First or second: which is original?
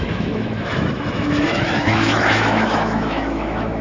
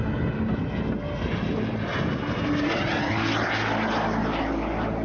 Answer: second